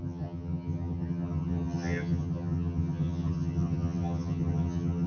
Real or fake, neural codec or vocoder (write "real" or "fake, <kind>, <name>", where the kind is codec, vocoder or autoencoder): fake, vocoder, HiFi-GAN